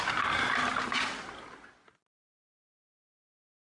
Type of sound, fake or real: real